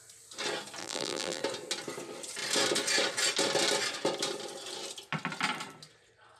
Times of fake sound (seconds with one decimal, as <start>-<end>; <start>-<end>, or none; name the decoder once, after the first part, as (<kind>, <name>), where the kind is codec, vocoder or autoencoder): 0.8-1.4 (vocoder, BigVGAN v2)